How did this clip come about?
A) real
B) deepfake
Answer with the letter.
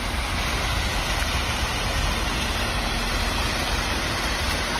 A